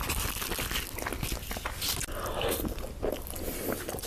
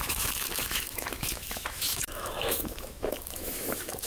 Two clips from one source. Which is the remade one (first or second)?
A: second